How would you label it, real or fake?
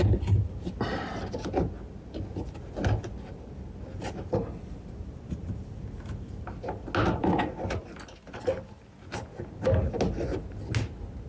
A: real